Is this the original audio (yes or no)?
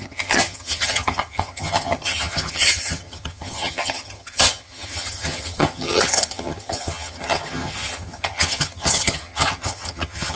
no